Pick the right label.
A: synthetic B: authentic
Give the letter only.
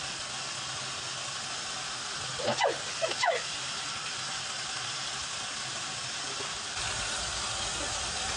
B